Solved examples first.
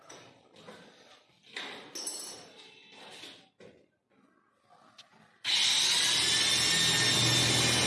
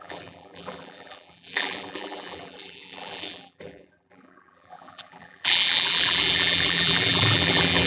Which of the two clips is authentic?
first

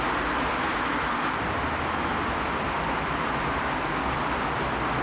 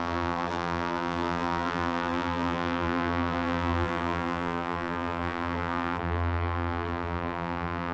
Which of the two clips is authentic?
first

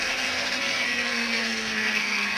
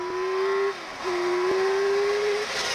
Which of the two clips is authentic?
second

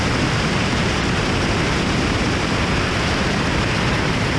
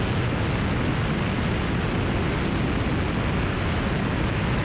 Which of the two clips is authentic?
second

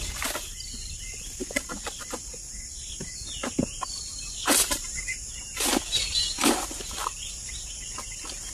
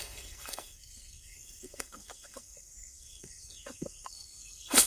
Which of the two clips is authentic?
first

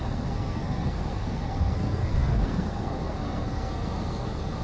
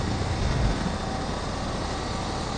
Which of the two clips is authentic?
second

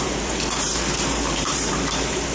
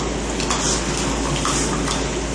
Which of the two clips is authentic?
second